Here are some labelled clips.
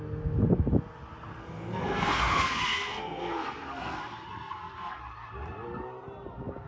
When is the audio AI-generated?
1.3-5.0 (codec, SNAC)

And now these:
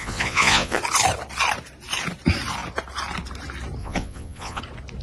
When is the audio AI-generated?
0.0-0.8 (vocoder, Vocos); 3.8-4.6

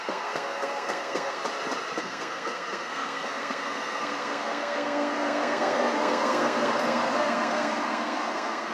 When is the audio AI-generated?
0.0-1.4 (codec, SNAC); 2.0-8.7